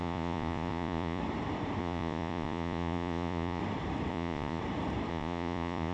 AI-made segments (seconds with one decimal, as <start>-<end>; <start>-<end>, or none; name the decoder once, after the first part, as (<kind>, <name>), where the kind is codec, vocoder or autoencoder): 0.0-1.2 (vocoder, Vocos); 1.8-3.6; 4.1-4.6; 5.1-5.9